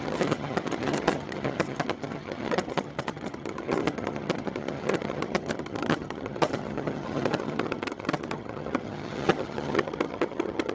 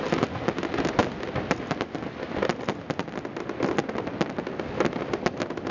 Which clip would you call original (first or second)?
second